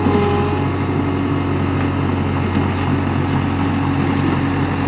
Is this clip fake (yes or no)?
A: no